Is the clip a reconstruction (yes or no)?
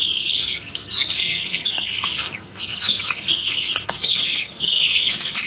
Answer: yes